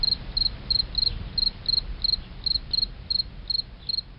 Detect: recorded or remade recorded